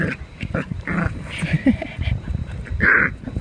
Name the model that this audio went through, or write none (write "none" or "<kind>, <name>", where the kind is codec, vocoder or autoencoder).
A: none